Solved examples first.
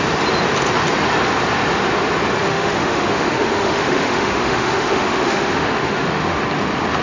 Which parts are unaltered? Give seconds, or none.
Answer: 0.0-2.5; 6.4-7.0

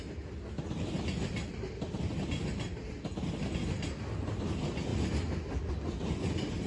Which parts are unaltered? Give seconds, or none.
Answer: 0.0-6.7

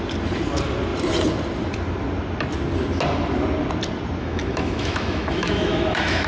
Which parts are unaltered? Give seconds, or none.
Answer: 0.0-4.2

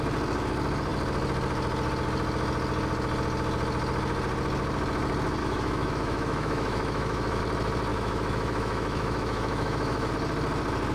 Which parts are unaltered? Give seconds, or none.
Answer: 0.0-5.4; 7.4-7.9; 10.1-10.9

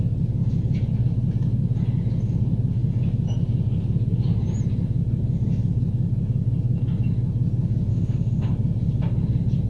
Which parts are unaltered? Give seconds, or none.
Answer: 0.0-7.9; 8.5-9.7

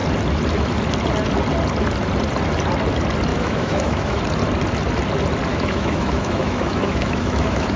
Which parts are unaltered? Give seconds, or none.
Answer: 0.0-3.3; 4.2-5.5